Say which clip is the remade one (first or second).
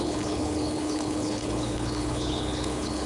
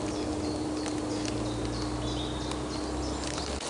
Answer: first